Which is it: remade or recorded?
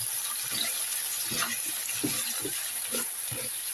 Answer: recorded